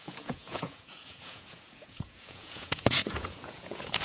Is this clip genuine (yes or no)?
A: no